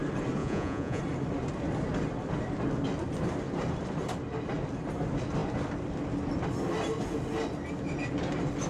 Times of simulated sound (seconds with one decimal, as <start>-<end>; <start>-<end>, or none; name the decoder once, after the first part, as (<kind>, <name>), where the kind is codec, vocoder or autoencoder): 0.4-1.0 (vocoder, Vocos)